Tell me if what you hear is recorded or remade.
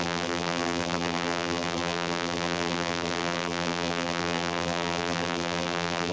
remade